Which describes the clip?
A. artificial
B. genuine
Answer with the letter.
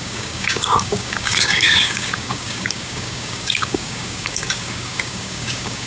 A